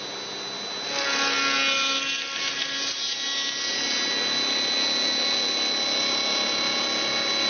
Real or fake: real